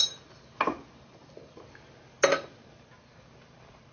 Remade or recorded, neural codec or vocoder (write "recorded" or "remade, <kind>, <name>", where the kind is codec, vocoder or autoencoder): recorded